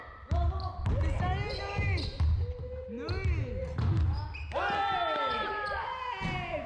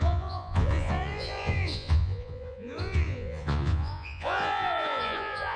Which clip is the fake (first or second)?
second